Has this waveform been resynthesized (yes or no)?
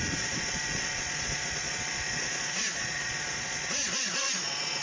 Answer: yes